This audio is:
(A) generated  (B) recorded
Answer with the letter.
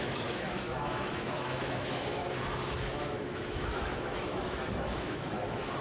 A